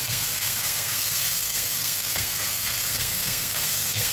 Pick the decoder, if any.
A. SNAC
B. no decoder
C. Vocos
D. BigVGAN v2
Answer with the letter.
A